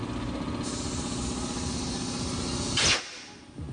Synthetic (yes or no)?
no